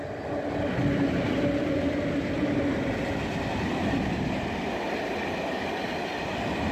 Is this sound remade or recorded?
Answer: recorded